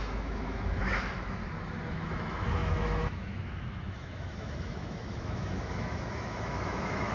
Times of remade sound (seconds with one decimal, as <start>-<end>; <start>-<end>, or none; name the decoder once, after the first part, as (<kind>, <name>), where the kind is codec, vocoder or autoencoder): 0.0-1.4 (autoencoder, DAC-VAE); 1.9-7.1